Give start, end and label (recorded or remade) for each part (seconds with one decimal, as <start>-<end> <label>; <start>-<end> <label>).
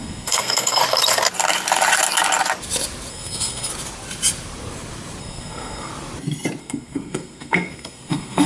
0.0-0.8 remade; 0.8-3.1 recorded; 3.1-3.7 remade; 3.7-5.2 recorded; 5.2-5.9 remade; 5.9-6.6 recorded; 6.6-8.5 remade